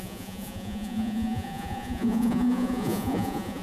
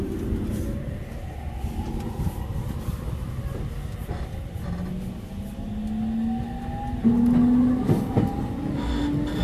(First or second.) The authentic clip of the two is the second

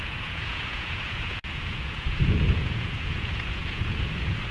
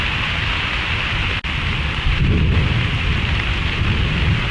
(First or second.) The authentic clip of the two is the second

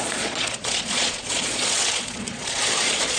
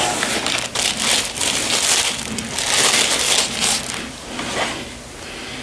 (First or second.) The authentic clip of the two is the second